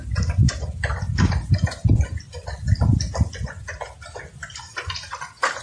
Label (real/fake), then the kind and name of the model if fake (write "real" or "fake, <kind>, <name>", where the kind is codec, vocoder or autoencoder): real